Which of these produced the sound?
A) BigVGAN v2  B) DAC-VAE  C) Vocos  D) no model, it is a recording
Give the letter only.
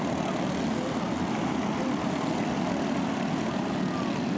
D